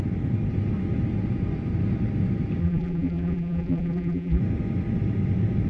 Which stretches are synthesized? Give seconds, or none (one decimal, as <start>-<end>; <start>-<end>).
2.6-4.4